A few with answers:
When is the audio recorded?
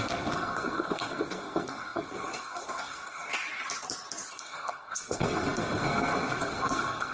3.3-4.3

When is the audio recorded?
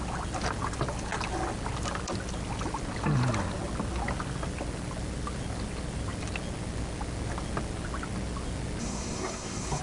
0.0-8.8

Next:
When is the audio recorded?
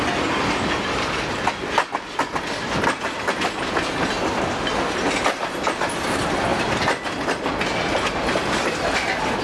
0.0-9.4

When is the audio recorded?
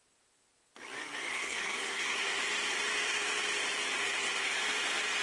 0.0-1.3; 2.4-4.0; 4.6-5.2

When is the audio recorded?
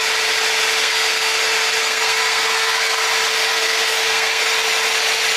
0.0-0.8; 1.4-1.8; 3.0-3.5; 4.4-5.4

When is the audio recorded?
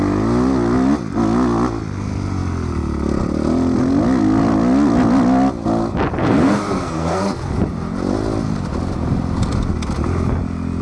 0.0-6.2; 7.5-10.8